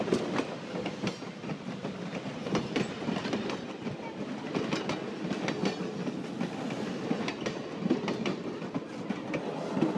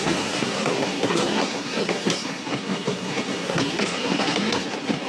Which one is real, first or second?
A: first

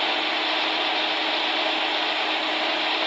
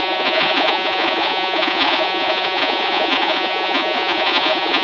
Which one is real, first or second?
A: first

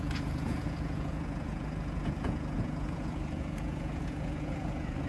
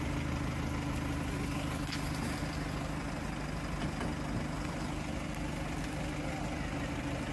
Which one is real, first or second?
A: second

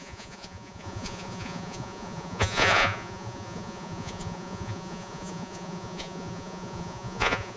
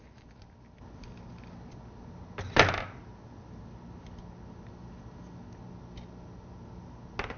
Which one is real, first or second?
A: second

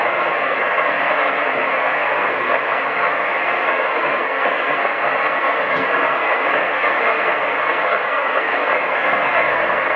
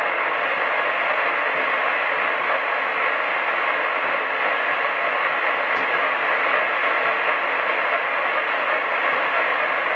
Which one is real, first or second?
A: second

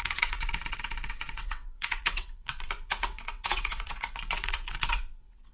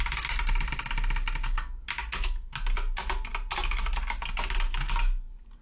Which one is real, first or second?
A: second